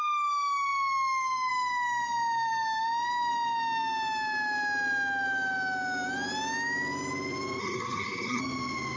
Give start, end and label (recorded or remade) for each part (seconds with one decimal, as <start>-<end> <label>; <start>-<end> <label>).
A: 0.0-7.6 recorded; 7.6-8.4 remade; 8.4-9.0 recorded